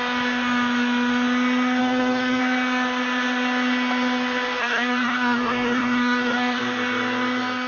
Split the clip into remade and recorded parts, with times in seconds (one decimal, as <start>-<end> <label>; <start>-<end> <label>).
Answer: 0.0-1.8 recorded; 1.8-2.4 remade; 2.4-4.6 recorded; 4.6-6.6 remade; 6.6-7.7 recorded